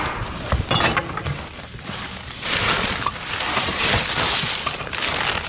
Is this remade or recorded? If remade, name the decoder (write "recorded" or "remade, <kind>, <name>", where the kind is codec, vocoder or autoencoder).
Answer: recorded